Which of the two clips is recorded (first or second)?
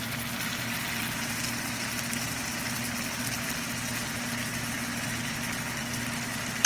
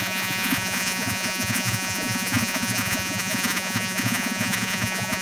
first